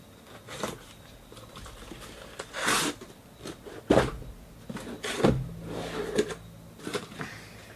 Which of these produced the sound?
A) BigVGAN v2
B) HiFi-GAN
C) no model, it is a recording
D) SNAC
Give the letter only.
C